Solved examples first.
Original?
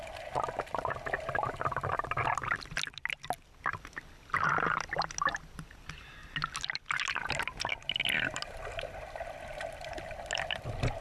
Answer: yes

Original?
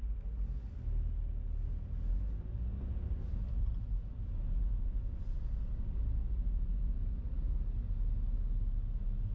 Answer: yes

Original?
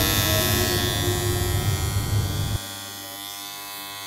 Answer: yes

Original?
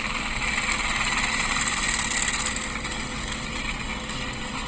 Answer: yes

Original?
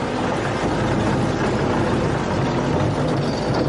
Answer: yes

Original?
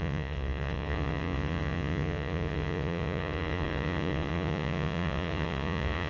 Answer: no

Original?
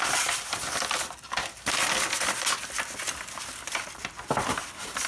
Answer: yes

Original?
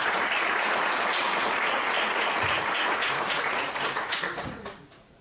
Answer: no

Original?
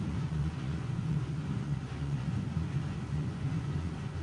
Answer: no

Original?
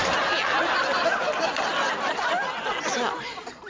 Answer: yes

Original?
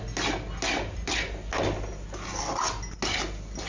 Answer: yes